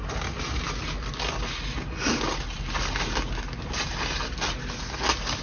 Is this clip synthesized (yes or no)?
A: no